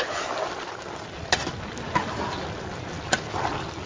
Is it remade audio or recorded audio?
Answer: recorded